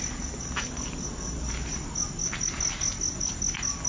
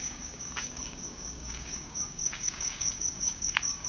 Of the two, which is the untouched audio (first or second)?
first